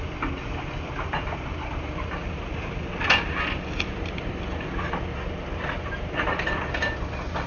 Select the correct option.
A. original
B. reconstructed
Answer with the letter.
A